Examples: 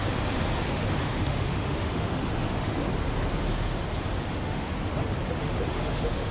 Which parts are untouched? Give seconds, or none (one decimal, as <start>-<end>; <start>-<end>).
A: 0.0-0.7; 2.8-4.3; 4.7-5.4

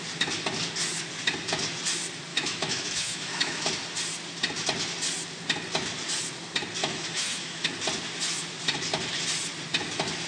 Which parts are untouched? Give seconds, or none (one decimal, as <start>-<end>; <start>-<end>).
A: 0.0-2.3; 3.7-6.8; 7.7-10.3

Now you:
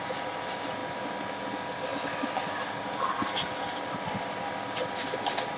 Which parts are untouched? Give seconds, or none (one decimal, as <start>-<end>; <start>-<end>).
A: 0.8-1.5